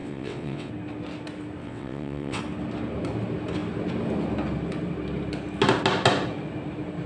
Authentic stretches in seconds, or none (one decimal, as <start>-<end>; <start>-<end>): 0.7-1.6; 2.4-7.1